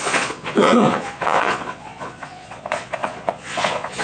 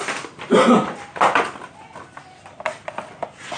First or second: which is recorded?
second